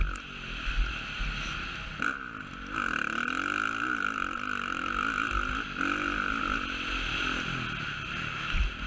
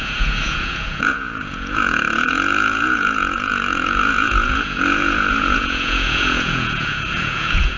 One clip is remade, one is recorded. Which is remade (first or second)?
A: second